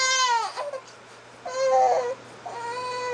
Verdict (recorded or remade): recorded